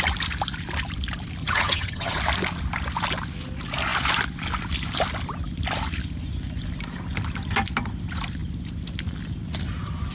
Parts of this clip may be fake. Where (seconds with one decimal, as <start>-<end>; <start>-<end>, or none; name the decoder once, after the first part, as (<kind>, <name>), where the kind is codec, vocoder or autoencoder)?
1.4-2.2 (vocoder, HiFi-GAN)